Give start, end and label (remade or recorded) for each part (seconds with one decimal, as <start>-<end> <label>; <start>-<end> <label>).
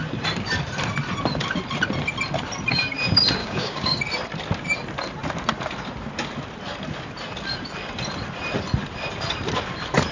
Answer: 0.0-3.4 recorded; 3.4-4.0 remade; 4.0-10.1 recorded